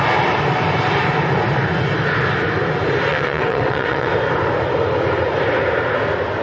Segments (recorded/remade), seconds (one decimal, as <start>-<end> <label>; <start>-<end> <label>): 0.0-3.1 recorded; 3.1-4.1 remade; 4.1-6.4 recorded